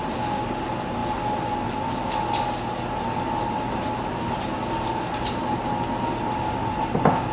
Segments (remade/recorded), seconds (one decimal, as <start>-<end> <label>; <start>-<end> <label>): 0.0-7.3 recorded